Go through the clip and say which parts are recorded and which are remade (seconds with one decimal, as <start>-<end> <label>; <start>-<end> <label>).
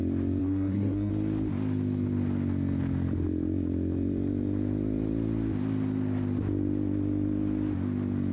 0.0-0.4 recorded; 0.4-1.1 remade; 1.1-8.3 recorded